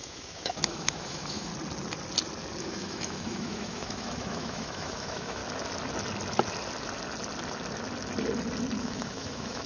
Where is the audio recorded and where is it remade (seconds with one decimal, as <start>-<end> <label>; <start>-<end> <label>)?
0.0-1.5 remade; 1.5-2.6 recorded; 2.6-5.4 remade; 5.4-8.8 recorded; 8.8-9.7 remade